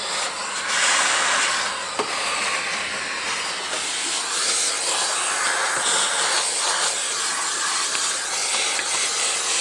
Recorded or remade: recorded